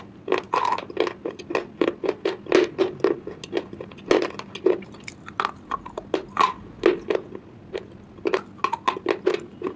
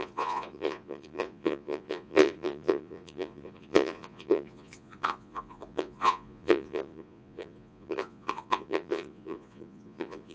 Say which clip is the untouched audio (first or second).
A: first